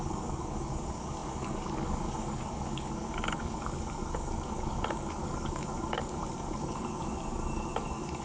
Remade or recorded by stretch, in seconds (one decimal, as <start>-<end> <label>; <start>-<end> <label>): 0.0-8.2 remade